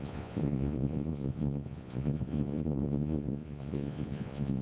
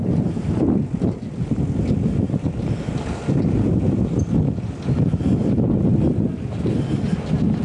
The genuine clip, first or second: second